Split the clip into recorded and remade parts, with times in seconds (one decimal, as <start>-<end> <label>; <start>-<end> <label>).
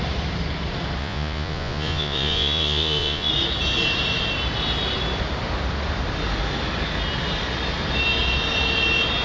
0.0-1.0 recorded; 1.0-3.3 remade; 3.3-9.2 recorded